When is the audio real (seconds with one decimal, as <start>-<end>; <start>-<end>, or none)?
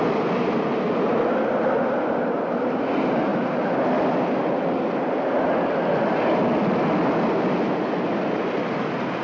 0.0-9.2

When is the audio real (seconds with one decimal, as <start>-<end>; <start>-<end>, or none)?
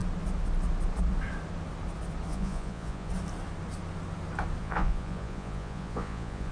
0.0-2.3; 3.1-4.6